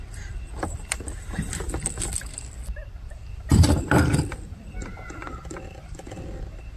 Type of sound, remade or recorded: remade